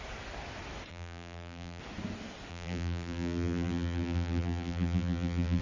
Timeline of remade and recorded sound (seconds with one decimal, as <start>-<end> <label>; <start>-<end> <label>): 0.0-0.9 recorded; 0.9-1.8 remade; 1.8-2.5 recorded; 2.5-5.6 remade